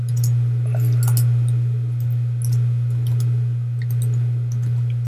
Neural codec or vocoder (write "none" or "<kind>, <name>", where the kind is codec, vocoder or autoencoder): none